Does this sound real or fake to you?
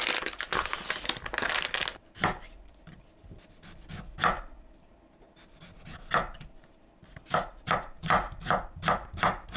real